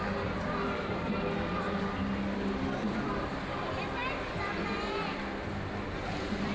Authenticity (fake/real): real